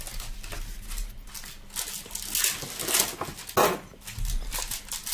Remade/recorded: recorded